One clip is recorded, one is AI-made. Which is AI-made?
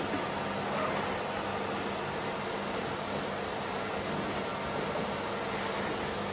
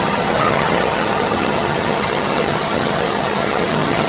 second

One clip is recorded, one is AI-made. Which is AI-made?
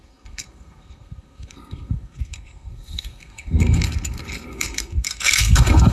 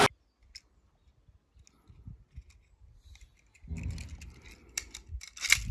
first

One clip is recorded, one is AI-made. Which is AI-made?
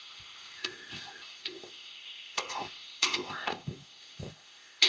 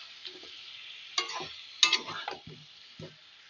first